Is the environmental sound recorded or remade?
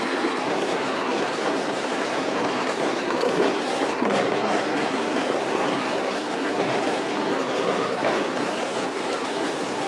remade